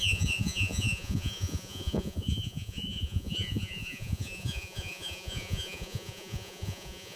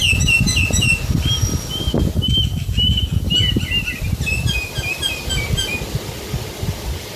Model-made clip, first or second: first